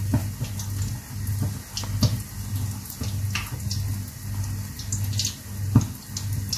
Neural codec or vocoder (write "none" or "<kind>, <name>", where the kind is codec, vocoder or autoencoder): none